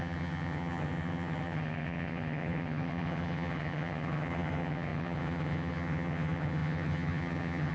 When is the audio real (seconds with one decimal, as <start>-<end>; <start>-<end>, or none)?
none